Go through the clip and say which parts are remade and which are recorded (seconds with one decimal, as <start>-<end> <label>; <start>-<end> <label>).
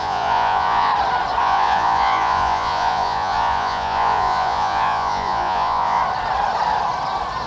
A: 0.0-0.9 remade; 0.9-1.4 recorded; 1.4-6.0 remade; 6.0-7.5 recorded